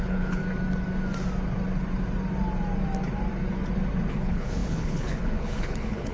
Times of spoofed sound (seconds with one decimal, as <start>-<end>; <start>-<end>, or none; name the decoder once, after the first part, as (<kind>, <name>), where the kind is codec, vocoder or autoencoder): 0.0-0.4 (codec, HILCodec); 4.1-6.1